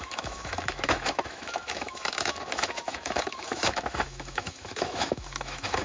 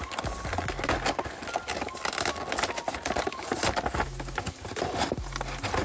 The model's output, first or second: first